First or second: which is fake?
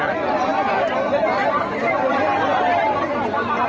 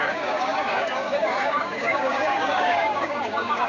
second